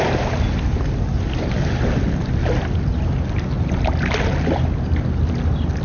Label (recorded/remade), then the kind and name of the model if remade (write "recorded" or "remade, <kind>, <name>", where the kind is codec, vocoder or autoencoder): recorded